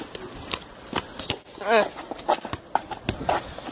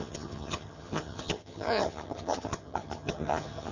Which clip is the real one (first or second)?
first